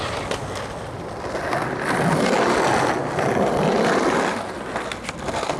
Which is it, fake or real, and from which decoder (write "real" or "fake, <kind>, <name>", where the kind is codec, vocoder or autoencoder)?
real